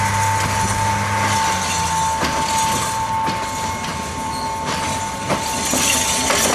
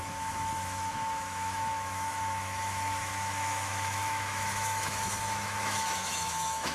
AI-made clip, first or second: second